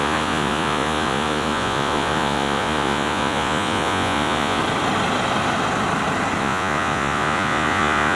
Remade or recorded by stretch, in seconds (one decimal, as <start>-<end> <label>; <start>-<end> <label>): 0.0-4.6 remade; 4.6-6.4 recorded; 6.4-8.2 remade